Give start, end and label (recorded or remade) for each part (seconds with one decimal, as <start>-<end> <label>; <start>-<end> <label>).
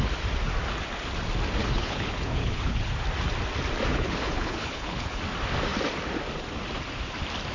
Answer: 0.0-1.6 recorded; 1.6-2.9 remade; 2.9-3.9 recorded; 3.9-5.2 remade; 5.2-7.5 recorded